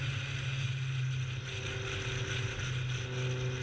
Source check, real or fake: real